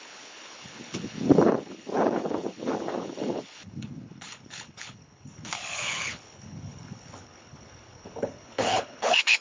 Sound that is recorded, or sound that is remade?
remade